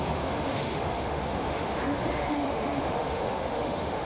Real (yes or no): no